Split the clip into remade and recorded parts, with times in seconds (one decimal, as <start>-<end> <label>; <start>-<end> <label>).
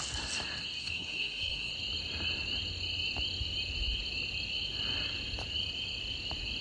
0.0-0.8 recorded; 0.8-1.7 remade; 1.7-6.6 recorded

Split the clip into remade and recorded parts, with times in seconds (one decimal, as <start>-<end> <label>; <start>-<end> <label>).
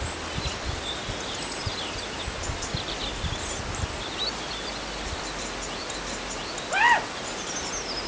0.0-8.1 recorded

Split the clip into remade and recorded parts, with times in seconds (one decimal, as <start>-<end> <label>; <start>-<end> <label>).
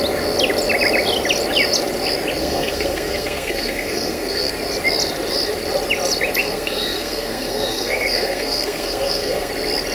0.0-2.4 recorded; 2.4-4.5 remade; 4.5-6.4 recorded; 6.4-9.5 remade; 9.5-9.9 recorded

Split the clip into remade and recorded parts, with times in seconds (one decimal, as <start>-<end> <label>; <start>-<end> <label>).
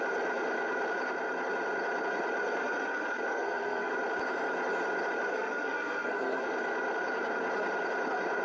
0.0-3.3 recorded; 3.3-3.9 remade; 3.9-5.3 recorded; 5.3-6.4 remade; 6.4-8.4 recorded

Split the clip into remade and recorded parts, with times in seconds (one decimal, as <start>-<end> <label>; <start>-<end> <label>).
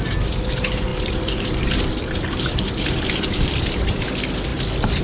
0.0-0.9 recorded; 0.9-3.9 remade; 3.9-4.5 recorded; 4.5-5.0 remade